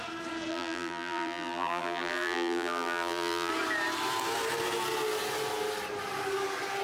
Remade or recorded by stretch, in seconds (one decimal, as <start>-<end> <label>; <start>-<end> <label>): 0.0-0.5 recorded; 0.5-3.5 remade; 3.5-6.8 recorded